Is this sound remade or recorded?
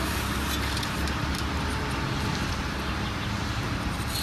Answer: recorded